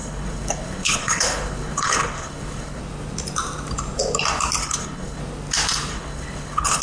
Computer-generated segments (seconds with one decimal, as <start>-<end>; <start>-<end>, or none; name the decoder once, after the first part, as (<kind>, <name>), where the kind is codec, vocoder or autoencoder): 0.0-2.8 (codec, HILCodec); 4.6-5.2; 5.9-6.8